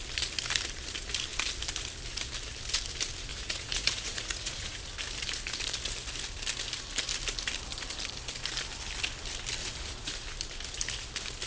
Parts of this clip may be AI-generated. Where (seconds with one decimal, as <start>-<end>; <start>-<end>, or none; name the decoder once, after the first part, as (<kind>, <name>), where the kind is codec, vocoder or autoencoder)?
3.3-4.8 (vocoder, Vocos); 9.6-10.1